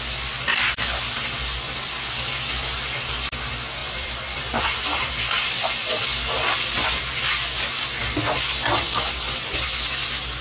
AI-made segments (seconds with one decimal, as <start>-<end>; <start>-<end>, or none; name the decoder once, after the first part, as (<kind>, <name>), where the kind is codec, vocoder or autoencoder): 3.8-5.1 (vocoder, BigVGAN v2)